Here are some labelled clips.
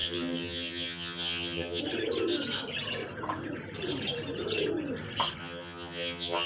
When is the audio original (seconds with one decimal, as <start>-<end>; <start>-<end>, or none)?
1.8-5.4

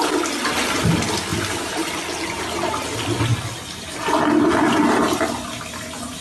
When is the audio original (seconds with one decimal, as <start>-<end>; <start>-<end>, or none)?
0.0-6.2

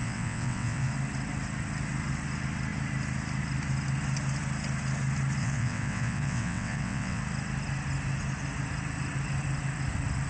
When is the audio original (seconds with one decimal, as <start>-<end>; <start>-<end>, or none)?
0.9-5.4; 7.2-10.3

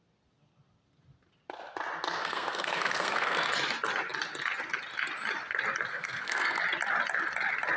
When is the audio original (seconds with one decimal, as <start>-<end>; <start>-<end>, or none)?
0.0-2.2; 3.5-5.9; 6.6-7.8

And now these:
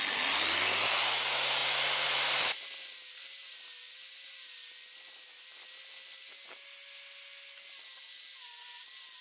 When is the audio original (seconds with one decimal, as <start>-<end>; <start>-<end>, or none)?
0.0-1.6; 3.6-9.2

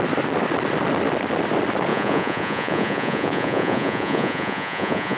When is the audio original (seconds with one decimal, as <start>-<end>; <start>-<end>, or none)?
0.0-1.9

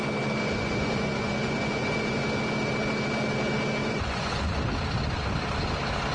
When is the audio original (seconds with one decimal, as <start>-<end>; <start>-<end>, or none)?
0.0-0.4; 2.2-3.8; 4.6-6.1